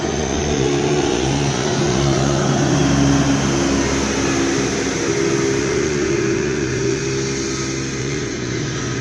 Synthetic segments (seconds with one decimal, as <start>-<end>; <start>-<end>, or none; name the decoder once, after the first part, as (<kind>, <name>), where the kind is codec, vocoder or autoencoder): 0.0-2.8 (vocoder, Vocos); 5.6-7.0; 8.0-9.0